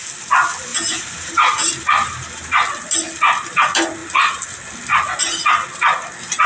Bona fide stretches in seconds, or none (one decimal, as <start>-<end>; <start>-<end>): 0.0-0.7; 2.2-6.5